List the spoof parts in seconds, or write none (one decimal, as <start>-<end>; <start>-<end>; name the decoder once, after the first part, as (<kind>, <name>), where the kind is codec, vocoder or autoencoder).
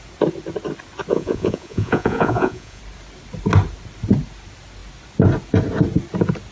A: 1.1-2.8 (vocoder, Vocos)